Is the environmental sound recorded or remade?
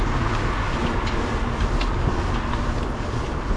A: recorded